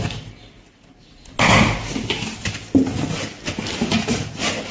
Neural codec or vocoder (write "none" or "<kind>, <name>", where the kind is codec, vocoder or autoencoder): none